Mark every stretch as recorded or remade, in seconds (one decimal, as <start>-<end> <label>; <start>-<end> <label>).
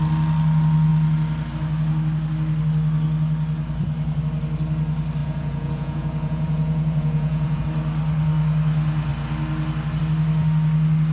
0.0-5.2 recorded; 5.2-7.6 remade; 7.6-11.1 recorded